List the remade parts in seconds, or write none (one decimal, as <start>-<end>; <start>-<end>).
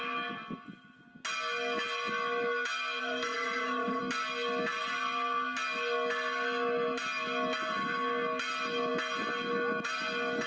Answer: 3.0-4.0